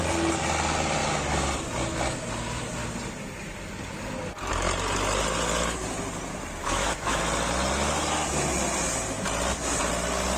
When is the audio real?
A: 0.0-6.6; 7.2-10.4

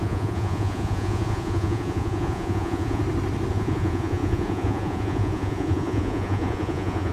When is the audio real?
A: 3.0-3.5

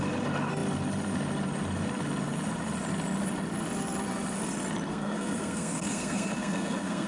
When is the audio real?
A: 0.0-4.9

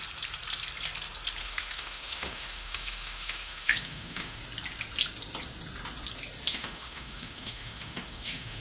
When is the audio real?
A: 0.0-1.4; 4.4-6.5

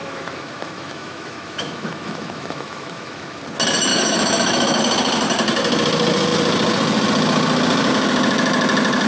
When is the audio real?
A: 3.4-3.9; 4.8-9.1

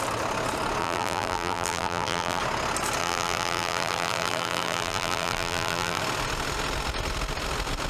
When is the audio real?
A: 0.0-0.8; 2.4-3.0; 6.0-7.9

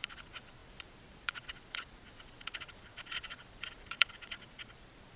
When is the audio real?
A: none

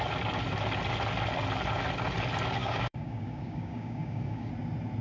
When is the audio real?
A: 0.0-2.6; 4.5-5.0